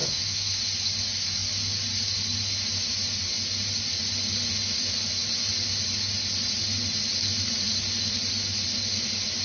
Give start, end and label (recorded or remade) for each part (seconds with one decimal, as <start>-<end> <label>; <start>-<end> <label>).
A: 0.0-0.5 remade; 0.5-9.4 recorded

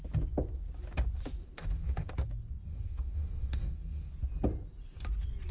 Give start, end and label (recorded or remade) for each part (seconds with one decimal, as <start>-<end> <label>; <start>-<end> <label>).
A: 0.0-1.4 recorded; 1.4-2.1 remade; 2.1-2.7 recorded; 2.7-4.1 remade; 4.1-5.5 recorded

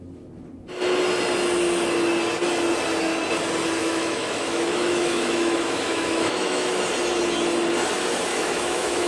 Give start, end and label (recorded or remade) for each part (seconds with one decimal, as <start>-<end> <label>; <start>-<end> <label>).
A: 0.0-3.8 recorded; 3.8-6.8 remade; 6.8-8.3 recorded; 8.3-9.1 remade